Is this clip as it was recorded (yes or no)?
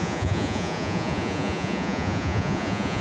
no